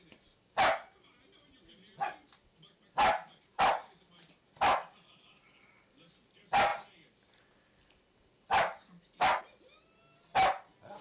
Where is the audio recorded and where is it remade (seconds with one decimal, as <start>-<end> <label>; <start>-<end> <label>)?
0.0-11.0 recorded